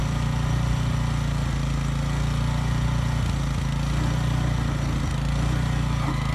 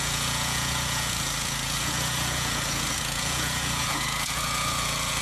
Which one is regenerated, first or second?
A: second